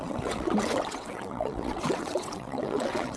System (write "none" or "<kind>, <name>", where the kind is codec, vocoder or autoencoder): vocoder, WaveNeXt